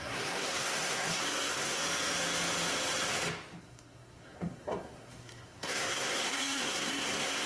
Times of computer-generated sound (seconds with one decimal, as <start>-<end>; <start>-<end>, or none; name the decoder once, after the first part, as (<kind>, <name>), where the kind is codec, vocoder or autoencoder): 0.0-1.8 (codec, SNAC); 3.6-7.5